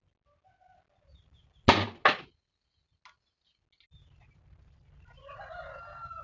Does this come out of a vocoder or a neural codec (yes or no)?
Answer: no